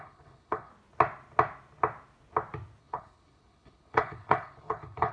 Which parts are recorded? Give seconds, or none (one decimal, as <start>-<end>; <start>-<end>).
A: 0.7-2.8